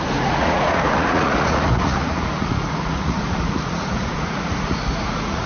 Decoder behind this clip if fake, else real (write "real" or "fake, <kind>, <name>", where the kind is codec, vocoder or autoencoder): fake, vocoder, Vocos